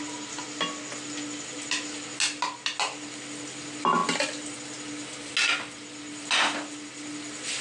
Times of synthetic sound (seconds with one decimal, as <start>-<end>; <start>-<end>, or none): none